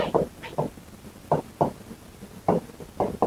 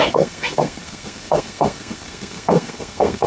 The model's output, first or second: second